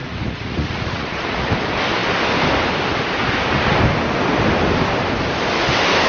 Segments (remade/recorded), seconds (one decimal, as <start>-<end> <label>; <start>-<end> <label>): 0.0-1.5 remade; 1.5-6.1 recorded